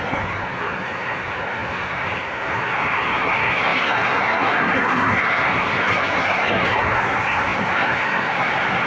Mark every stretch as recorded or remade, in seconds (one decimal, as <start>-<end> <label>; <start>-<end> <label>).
0.0-8.9 remade